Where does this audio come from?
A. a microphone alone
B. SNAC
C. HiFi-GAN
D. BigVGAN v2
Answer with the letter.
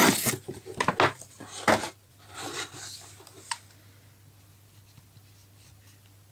A